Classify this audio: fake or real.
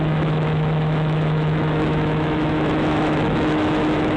fake